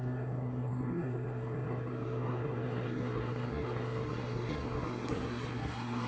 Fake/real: fake